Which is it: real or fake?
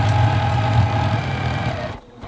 real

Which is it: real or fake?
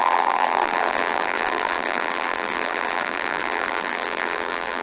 fake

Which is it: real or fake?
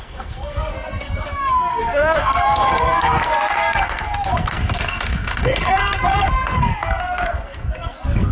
fake